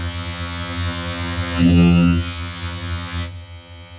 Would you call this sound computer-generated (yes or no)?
yes